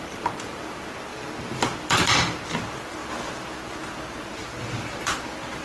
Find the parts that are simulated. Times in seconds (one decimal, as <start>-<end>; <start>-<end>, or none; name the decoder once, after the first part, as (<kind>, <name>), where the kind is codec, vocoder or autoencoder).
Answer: 1.1-2.6 (vocoder, BigVGAN v2); 3.0-3.6; 4.4-5.0